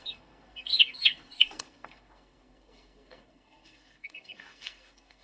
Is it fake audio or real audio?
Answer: fake